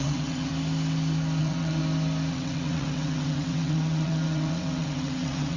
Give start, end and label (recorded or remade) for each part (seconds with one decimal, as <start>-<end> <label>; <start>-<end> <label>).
0.0-0.5 remade; 0.5-1.4 recorded; 1.4-1.8 remade; 1.8-2.3 recorded; 2.3-5.6 remade